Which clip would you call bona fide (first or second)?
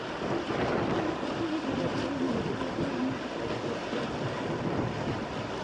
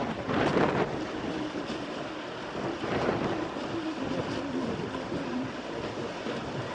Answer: first